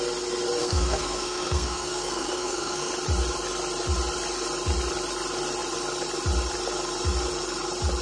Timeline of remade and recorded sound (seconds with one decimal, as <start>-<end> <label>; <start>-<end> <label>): 0.0-0.6 recorded; 0.6-2.9 remade; 2.9-8.0 recorded